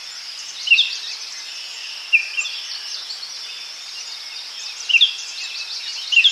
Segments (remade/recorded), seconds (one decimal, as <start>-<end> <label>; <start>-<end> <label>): 0.0-1.1 recorded; 1.1-6.3 remade